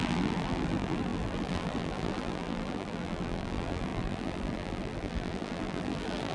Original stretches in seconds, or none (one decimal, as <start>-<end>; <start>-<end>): none